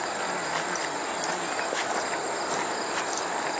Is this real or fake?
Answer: real